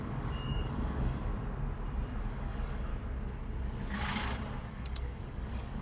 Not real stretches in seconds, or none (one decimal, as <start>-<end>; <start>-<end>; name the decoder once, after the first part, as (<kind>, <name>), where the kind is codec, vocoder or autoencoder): 0.0-1.3 (codec, DAC); 2.2-2.9; 4.7-5.8

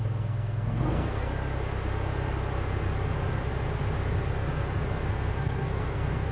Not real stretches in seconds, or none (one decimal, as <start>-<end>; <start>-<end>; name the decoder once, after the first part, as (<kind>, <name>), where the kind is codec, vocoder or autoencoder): 0.0-1.3 (codec, SNAC); 5.1-6.3

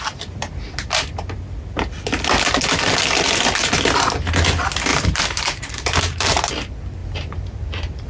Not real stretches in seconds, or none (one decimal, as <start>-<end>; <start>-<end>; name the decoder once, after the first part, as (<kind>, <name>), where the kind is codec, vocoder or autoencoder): 4.9-6.5 (vocoder, BigVGAN v2); 7.0-8.1

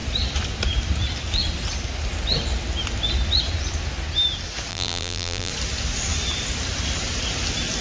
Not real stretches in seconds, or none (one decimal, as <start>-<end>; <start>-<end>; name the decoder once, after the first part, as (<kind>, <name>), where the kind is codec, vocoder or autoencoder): 4.7-5.5 (vocoder, BigVGAN v2)

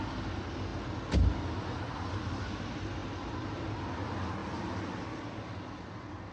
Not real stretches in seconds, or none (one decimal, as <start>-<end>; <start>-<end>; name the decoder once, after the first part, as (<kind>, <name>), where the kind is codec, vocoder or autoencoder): none

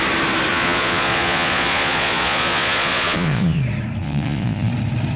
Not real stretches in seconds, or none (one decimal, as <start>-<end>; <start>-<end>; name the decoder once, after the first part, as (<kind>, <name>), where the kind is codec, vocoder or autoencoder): 0.5-3.6 (vocoder, Vocos); 4.0-4.7